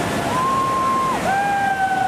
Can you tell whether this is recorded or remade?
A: recorded